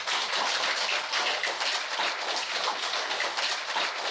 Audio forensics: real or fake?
real